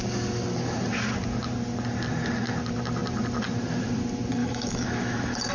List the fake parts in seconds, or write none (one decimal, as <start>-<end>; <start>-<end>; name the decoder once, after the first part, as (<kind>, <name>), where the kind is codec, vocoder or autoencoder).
4.4-5.5 (autoencoder, DAC-VAE)